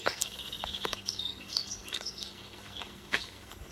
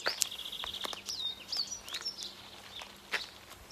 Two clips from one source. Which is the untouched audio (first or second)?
second